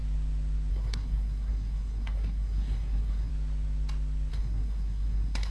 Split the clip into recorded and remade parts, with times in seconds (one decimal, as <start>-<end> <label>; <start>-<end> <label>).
0.0-0.7 recorded; 0.7-3.3 remade; 3.3-4.3 recorded; 4.3-5.5 remade